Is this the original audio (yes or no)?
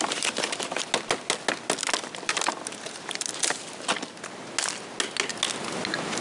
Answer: yes